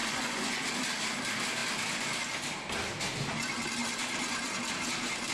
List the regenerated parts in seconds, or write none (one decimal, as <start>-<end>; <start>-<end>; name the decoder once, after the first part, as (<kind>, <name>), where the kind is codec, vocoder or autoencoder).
0.0-0.7 (vocoder, Vocos)